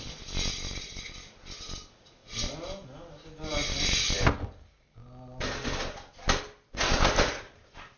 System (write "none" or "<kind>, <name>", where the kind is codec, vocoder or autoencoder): none